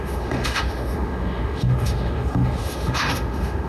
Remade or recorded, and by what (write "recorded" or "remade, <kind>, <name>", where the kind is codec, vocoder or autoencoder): remade, autoencoder, DAC-VAE